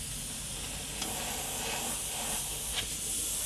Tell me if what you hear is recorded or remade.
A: recorded